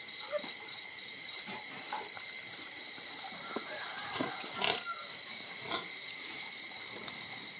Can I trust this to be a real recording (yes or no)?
no